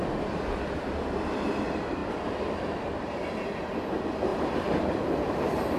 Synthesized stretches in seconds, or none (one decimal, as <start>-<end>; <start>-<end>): 2.0-3.2; 4.3-5.3